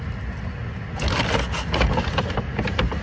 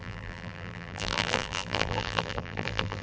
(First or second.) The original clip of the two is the first